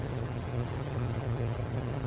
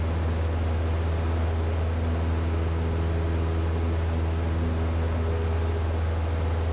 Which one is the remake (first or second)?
first